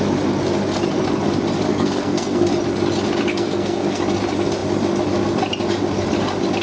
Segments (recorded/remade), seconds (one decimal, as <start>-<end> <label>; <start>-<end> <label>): 0.0-1.7 recorded; 1.7-2.5 remade; 2.5-3.3 recorded; 3.3-4.0 remade; 4.0-6.6 recorded